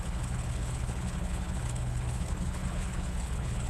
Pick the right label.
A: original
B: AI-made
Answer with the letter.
B